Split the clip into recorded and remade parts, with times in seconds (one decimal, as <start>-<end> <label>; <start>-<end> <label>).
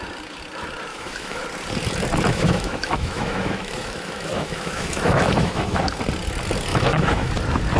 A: 0.0-0.9 recorded; 0.9-1.4 remade; 1.4-2.3 recorded; 2.3-5.8 remade; 5.8-6.7 recorded; 6.7-7.3 remade; 7.3-7.8 recorded